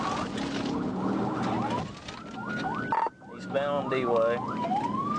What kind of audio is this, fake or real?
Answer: real